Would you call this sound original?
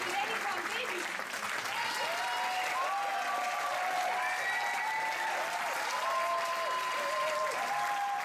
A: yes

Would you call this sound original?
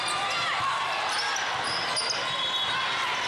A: yes